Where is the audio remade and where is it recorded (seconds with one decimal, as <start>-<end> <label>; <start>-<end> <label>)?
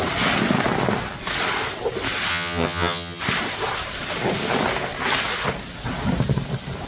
0.0-2.3 recorded; 2.3-3.2 remade; 3.2-6.9 recorded